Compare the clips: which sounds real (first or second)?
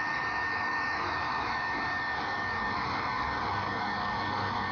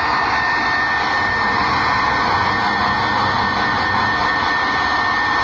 second